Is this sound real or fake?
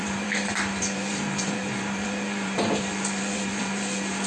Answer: fake